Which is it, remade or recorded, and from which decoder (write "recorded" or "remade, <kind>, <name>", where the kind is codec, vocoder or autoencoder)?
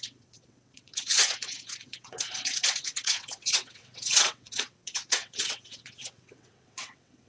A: remade, vocoder, WaveNeXt